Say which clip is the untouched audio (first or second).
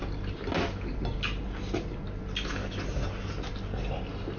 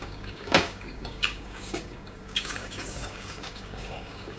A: first